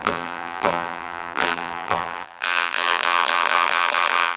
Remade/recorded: remade